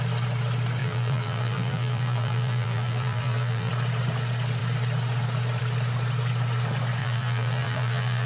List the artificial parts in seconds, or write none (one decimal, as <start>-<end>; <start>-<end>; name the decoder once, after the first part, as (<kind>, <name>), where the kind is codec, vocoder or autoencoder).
0.8-3.7 (vocoder, BigVGAN v2); 7.0-8.3